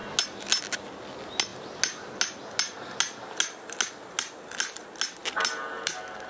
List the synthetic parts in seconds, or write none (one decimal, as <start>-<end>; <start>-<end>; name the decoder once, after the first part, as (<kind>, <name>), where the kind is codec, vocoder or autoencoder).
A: none